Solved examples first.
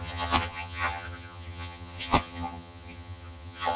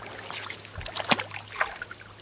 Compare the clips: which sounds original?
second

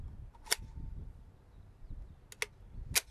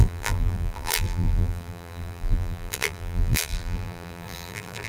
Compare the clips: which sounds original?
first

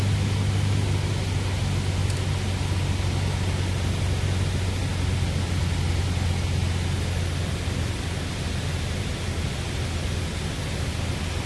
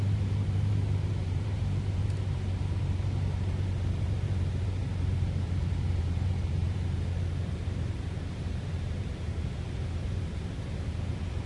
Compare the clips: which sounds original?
first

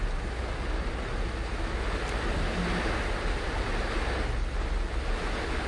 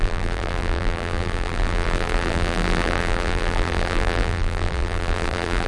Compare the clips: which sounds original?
first